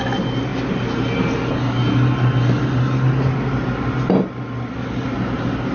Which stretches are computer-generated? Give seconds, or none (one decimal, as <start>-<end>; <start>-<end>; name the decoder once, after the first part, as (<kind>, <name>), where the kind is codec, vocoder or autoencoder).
none